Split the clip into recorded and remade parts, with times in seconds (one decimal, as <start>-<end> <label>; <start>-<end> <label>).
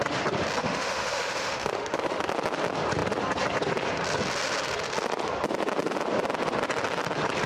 0.0-0.6 recorded; 0.6-2.3 remade; 2.3-7.5 recorded